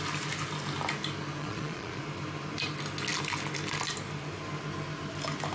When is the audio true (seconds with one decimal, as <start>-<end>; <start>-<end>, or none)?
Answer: 0.0-1.4; 2.0-5.5